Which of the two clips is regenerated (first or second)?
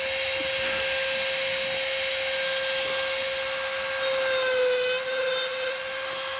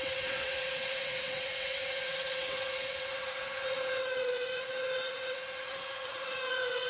second